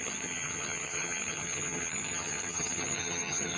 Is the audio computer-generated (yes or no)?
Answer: yes